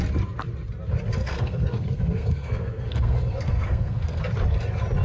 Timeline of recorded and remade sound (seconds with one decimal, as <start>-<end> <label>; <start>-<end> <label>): 0.0-1.2 recorded; 1.2-4.2 remade; 4.2-5.0 recorded